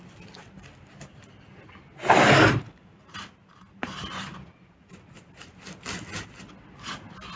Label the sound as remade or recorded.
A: recorded